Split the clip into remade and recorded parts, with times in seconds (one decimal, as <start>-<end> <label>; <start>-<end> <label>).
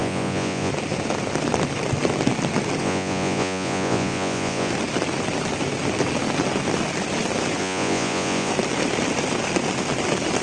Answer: 0.0-0.7 remade; 0.7-2.8 recorded; 2.8-4.7 remade; 4.7-7.6 recorded; 7.6-8.5 remade; 8.5-10.4 recorded